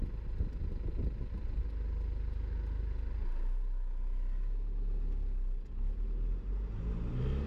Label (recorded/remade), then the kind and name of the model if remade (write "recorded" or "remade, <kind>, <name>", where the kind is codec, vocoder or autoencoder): recorded